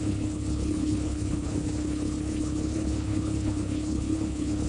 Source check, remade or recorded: remade